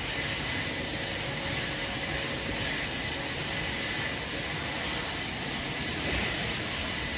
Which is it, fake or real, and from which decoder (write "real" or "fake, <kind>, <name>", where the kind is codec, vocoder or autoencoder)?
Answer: real